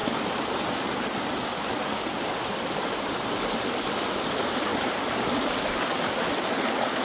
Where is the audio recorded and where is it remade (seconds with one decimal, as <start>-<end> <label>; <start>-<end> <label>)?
0.0-7.0 recorded